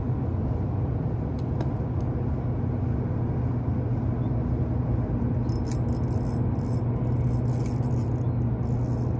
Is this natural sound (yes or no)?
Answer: yes